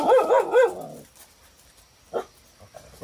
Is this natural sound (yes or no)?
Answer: yes